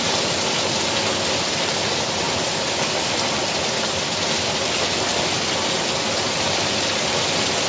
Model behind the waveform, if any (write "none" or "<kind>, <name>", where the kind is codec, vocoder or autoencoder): none